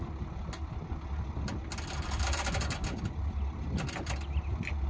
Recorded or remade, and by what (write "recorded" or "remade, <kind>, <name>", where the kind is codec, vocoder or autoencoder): recorded